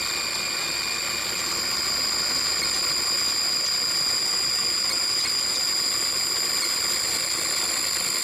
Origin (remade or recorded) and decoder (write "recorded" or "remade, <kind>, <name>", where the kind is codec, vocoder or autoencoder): recorded